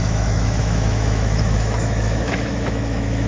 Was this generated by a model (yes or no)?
yes